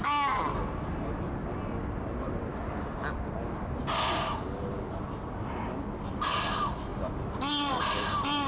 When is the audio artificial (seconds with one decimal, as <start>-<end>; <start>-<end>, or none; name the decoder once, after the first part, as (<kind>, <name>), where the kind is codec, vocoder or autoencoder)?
none